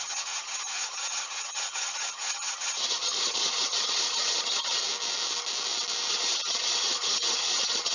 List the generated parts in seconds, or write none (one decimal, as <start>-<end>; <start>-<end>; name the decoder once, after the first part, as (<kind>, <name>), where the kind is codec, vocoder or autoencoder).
0.0-4.8 (vocoder, HiFi-GAN); 6.1-7.9